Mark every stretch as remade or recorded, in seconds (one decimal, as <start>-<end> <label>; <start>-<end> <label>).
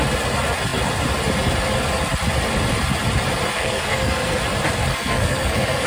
0.0-3.5 recorded; 3.5-4.4 remade; 4.4-4.9 recorded; 4.9-5.9 remade